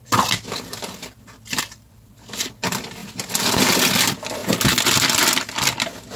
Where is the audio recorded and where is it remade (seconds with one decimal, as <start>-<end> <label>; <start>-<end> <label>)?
0.0-3.0 remade; 3.0-3.6 recorded; 3.6-4.4 remade; 4.4-5.1 recorded; 5.1-6.2 remade